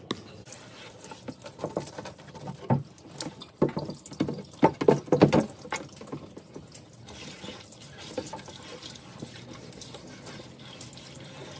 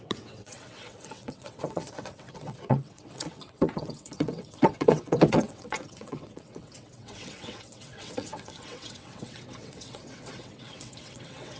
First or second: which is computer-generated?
second